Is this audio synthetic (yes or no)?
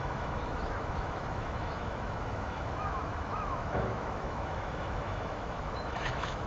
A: yes